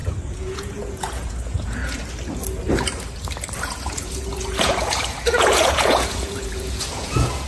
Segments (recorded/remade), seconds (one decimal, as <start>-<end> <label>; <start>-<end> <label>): 0.0-1.8 remade; 1.8-3.6 recorded; 3.6-7.5 remade